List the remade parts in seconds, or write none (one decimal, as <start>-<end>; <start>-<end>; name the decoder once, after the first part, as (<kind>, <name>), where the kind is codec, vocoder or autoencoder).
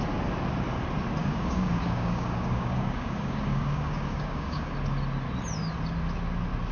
1.2-4.7 (codec, DAC)